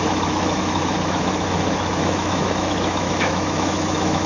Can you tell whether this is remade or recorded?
remade